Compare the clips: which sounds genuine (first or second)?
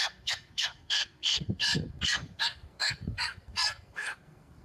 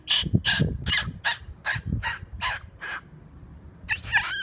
second